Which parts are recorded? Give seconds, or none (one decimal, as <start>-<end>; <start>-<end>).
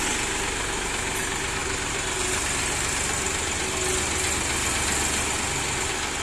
0.0-6.2